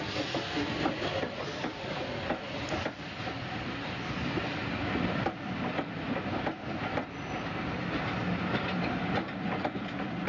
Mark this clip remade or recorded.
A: recorded